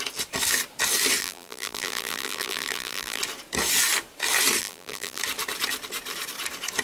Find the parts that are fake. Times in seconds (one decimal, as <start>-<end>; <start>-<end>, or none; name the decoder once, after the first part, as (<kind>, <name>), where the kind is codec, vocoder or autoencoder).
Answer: 1.2-3.2 (vocoder, BigVGAN v2); 4.6-5.2